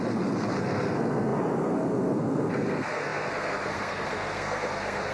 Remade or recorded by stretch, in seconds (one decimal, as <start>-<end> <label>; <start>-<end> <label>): 0.0-5.1 remade